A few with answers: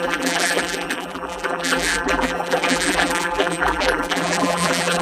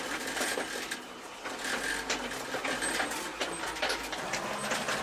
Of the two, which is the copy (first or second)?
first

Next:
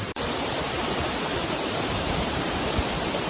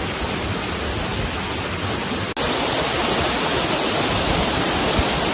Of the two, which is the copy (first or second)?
first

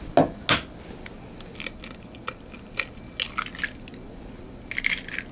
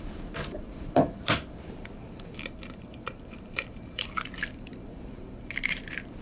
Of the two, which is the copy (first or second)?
second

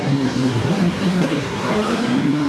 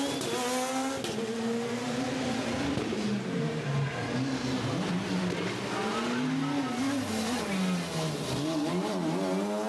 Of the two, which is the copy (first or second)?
first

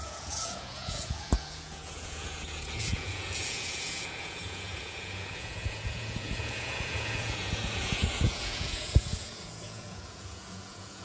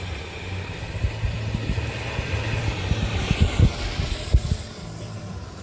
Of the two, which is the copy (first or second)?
first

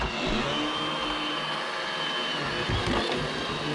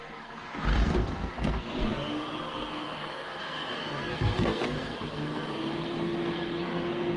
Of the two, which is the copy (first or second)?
second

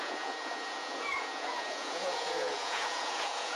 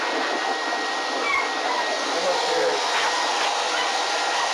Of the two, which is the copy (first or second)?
first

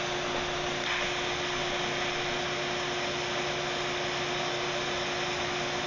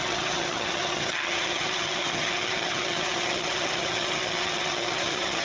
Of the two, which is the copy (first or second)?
second